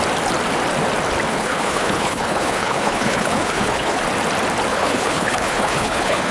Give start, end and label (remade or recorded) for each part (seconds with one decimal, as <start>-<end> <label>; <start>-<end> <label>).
0.0-1.3 recorded; 1.3-4.0 remade; 4.0-4.7 recorded; 4.7-6.3 remade